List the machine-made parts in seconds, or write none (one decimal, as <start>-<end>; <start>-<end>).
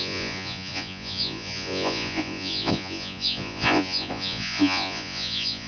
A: 0.0-5.7